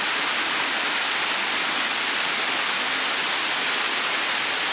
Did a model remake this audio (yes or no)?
no